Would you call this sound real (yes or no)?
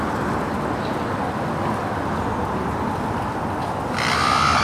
yes